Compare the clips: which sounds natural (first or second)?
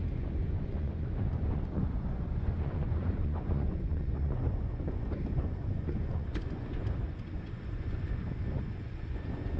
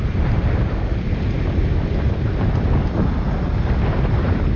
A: second